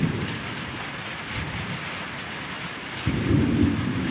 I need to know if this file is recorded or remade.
recorded